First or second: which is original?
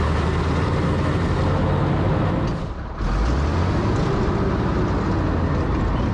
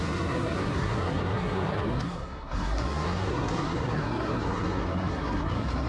first